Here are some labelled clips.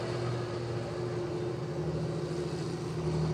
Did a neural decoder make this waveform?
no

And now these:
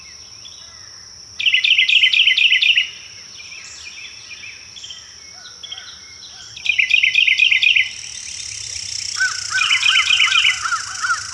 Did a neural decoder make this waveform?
no